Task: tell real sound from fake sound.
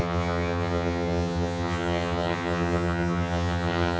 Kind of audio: fake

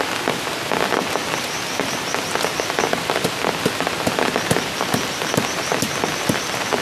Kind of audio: real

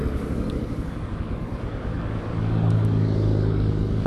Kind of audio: fake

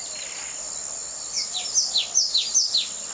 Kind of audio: real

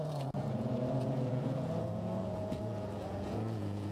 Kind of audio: fake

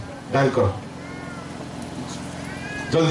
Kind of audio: real